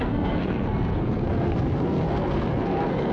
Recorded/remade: remade